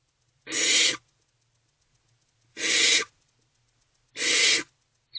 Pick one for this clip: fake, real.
real